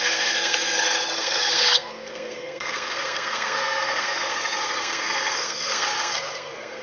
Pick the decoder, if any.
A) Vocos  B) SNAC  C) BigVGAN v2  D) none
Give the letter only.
B